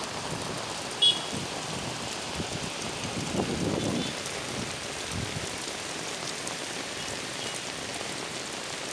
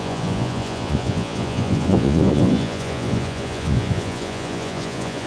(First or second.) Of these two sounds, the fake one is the second